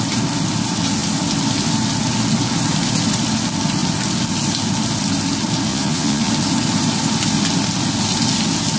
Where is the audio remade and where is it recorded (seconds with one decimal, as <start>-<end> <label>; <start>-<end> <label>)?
0.0-5.7 recorded; 5.7-6.3 remade; 6.3-8.8 recorded